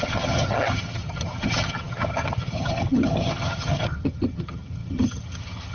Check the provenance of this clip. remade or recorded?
remade